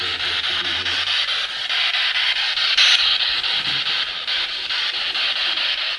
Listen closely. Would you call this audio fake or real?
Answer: real